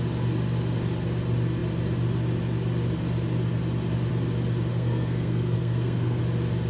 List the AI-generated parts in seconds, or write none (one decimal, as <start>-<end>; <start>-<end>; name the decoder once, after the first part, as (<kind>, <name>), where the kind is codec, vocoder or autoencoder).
4.7-6.2 (codec, SNAC)